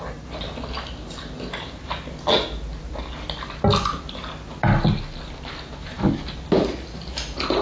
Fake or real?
real